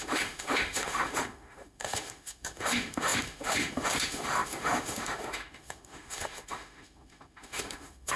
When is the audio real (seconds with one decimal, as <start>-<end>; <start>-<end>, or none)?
none